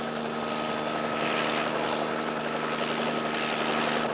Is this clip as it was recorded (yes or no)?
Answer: yes